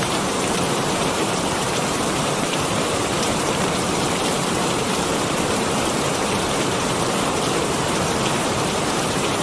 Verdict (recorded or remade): remade